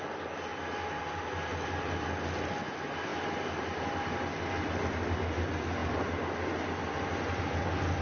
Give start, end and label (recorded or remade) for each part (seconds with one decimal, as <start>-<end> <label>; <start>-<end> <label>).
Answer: 0.0-8.0 recorded